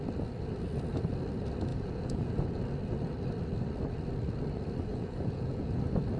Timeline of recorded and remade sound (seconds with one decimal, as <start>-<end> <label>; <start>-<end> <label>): 0.0-1.7 recorded; 1.7-2.6 remade; 2.6-4.9 recorded; 4.9-5.8 remade; 5.8-6.2 recorded

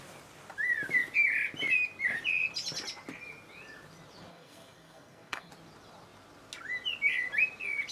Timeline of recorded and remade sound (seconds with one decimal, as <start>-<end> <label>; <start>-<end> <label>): 0.0-4.3 recorded; 4.3-5.5 remade; 5.5-7.9 recorded

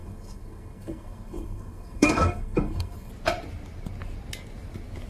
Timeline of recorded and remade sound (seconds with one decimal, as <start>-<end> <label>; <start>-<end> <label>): 0.0-3.1 remade; 3.1-5.1 recorded

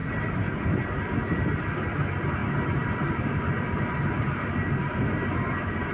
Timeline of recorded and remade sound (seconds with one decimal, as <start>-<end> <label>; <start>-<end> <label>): 0.0-0.6 remade; 0.6-2.4 recorded; 2.4-3.8 remade; 3.8-5.9 recorded

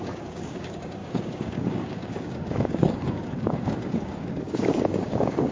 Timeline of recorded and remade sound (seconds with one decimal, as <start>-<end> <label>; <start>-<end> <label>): 0.0-5.5 remade

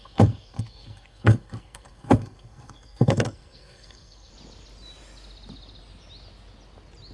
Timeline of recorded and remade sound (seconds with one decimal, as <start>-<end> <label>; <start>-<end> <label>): 0.0-4.3 remade; 4.3-7.1 recorded

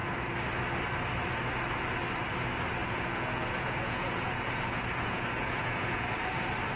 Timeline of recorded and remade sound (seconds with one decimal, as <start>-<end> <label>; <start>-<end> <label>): 0.0-2.8 recorded; 2.8-6.1 remade; 6.1-6.8 recorded

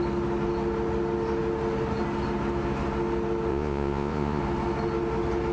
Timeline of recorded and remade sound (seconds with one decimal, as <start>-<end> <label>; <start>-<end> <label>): 0.0-3.5 recorded; 3.5-4.4 remade; 4.4-5.5 recorded